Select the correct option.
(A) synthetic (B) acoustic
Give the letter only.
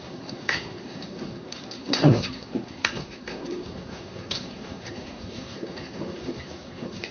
A